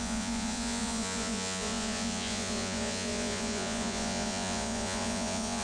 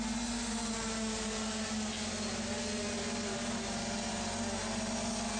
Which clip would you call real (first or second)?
second